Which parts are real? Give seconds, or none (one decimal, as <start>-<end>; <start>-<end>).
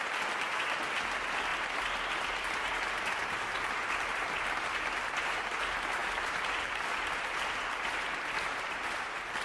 0.0-1.5; 4.5-6.0; 8.4-9.4